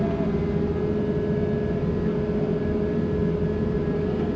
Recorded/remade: recorded